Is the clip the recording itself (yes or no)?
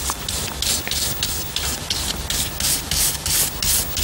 yes